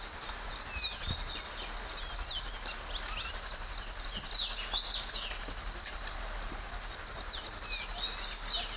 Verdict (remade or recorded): recorded